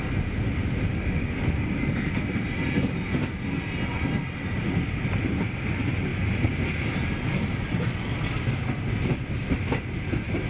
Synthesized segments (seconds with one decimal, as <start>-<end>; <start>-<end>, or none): 0.9-1.6